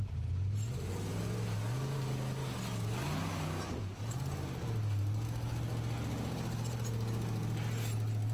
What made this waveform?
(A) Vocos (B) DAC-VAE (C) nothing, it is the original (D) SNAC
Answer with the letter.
C